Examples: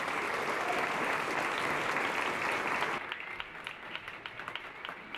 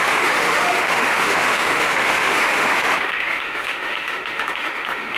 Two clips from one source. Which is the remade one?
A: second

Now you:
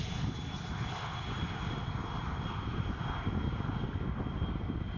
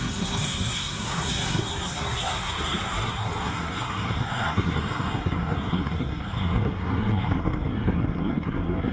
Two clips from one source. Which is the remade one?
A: second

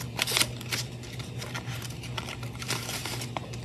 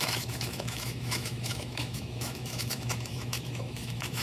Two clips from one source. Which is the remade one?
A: second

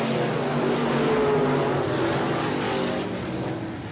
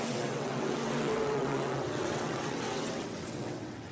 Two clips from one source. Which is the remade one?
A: second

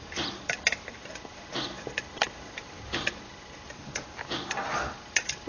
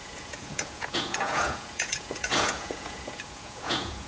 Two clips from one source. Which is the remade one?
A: second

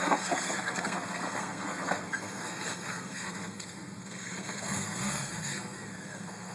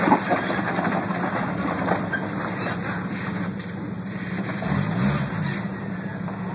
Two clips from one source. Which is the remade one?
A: first